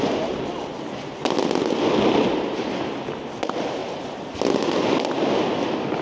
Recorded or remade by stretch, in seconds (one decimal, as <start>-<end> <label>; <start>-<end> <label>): 0.0-6.0 recorded